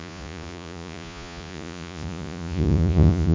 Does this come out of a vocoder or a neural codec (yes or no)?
yes